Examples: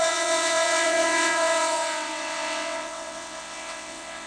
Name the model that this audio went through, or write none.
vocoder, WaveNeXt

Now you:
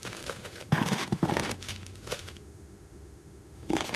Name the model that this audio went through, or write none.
autoencoder, DAC-VAE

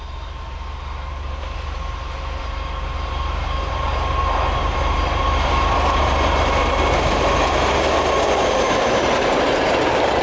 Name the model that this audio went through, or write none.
vocoder, BigVGAN v2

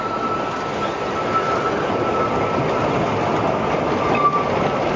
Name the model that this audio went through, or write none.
none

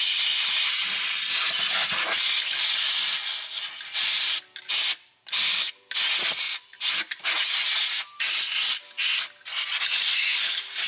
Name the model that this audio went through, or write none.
none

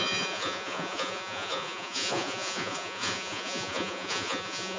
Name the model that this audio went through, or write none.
vocoder, Vocos